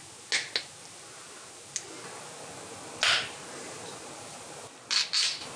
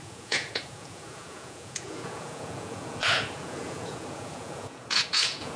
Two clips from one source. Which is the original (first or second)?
first